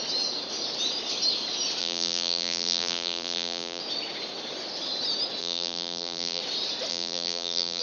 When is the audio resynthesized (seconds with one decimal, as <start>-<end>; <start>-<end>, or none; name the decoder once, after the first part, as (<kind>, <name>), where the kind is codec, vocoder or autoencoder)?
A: 1.8-3.8 (vocoder, BigVGAN v2); 5.4-6.4; 6.9-7.8